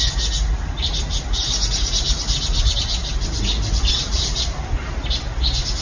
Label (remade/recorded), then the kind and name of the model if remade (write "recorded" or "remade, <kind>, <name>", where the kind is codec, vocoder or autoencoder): recorded